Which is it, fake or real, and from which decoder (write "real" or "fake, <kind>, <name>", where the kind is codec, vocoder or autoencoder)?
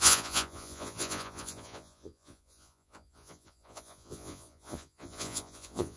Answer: fake, vocoder, Vocos